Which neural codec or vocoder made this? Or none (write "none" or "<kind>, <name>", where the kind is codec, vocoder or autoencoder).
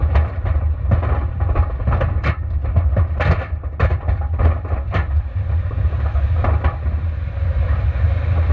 vocoder, BigVGAN v2